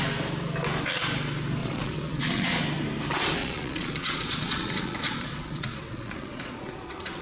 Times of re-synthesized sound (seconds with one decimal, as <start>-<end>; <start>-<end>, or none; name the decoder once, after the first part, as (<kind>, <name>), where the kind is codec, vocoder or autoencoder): 1.6-2.6 (vocoder, Vocos); 3.4-7.2